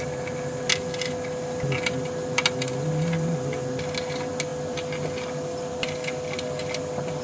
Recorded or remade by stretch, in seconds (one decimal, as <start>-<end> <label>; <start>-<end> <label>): 0.0-7.2 recorded